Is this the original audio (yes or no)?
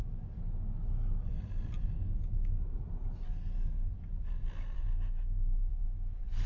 yes